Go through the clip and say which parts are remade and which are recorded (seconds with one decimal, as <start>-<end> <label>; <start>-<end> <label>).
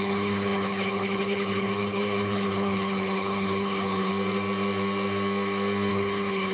0.0-4.1 remade; 4.1-5.9 recorded; 5.9-6.5 remade